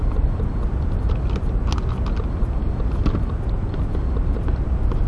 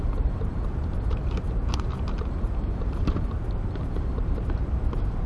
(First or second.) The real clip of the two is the first